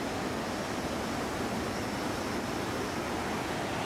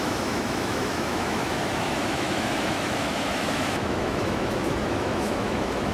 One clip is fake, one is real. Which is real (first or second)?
first